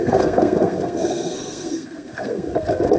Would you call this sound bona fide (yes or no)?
no